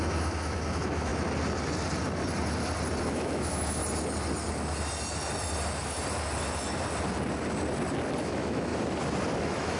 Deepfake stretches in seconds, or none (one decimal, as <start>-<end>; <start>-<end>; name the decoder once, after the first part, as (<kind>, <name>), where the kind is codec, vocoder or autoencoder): 0.0-1.1 (autoencoder, DAC-VAE); 3.0-3.8; 8.2-8.7; 9.4-9.8